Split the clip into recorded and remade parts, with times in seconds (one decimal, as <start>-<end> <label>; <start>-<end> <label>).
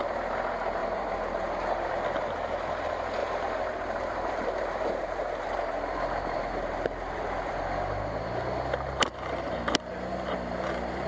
0.0-0.8 recorded; 0.8-1.9 remade; 1.9-3.2 recorded; 3.2-8.3 remade; 8.3-11.1 recorded